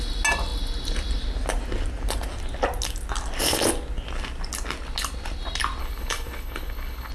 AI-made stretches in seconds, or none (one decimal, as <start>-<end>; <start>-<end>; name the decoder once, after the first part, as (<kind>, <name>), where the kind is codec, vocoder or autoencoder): 5.8-7.1 (codec, HILCodec)